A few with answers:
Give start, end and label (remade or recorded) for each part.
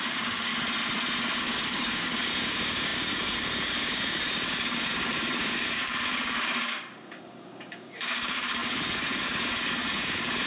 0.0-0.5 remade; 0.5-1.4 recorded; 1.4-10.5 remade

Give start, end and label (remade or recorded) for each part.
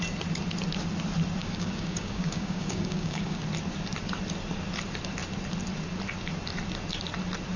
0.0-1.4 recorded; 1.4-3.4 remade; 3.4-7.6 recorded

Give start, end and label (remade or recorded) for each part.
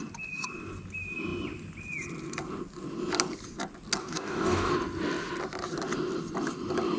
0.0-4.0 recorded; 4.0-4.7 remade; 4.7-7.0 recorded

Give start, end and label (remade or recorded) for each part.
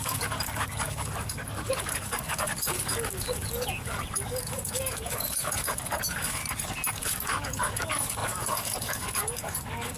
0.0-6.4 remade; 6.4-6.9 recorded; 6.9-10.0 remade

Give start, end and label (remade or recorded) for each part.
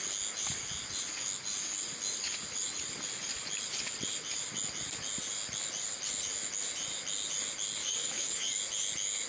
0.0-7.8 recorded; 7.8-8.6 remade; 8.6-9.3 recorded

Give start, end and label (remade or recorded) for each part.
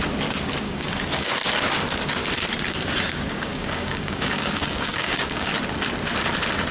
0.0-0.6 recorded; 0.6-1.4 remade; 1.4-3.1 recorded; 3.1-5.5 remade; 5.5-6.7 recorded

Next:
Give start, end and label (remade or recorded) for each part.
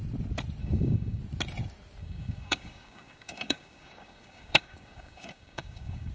0.0-0.6 recorded; 0.6-1.2 remade; 1.2-2.0 recorded; 2.0-6.1 remade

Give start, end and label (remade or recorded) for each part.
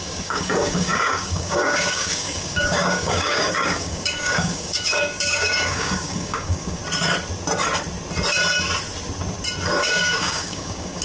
0.0-6.8 remade; 6.8-9.8 recorded; 9.8-11.0 remade